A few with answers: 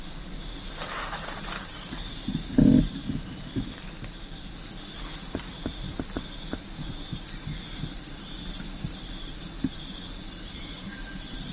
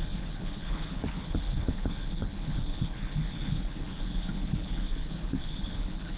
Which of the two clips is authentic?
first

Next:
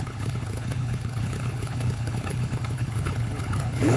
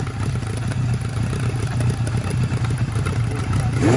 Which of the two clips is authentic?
second